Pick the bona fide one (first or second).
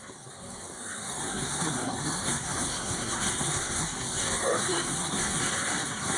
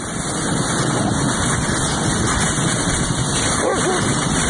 second